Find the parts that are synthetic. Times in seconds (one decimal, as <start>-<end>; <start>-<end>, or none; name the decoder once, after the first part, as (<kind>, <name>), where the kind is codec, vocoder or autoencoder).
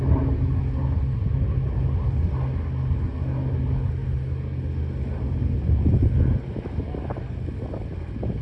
none